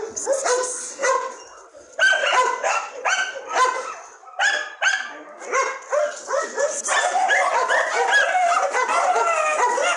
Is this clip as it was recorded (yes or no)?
yes